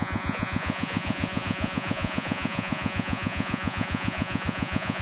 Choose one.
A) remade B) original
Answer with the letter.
A